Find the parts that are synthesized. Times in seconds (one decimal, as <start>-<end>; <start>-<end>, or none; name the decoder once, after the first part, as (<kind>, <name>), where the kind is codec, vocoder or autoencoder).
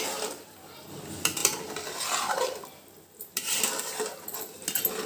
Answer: none